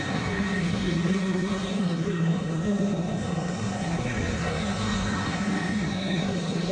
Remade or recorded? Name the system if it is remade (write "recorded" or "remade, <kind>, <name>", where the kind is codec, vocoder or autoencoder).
remade, codec, SNAC